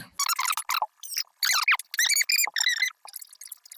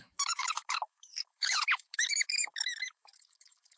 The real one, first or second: first